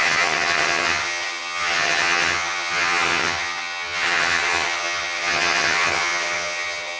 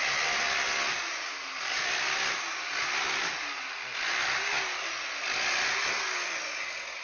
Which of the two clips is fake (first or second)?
first